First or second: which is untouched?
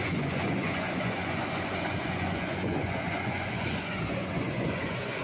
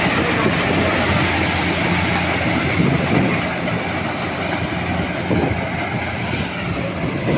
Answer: second